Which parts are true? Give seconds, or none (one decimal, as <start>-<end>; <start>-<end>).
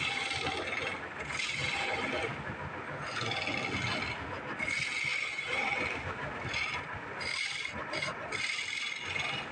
0.0-5.1; 6.3-9.5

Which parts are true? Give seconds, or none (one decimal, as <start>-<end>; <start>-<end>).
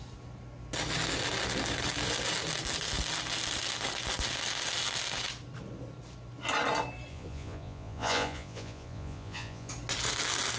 0.0-7.1; 9.7-10.6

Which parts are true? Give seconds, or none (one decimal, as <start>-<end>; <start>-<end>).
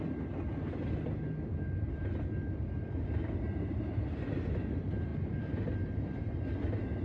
0.0-7.0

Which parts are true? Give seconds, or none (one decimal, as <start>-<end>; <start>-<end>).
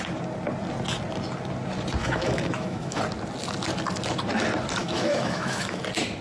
0.0-2.0; 3.0-4.8; 5.8-6.2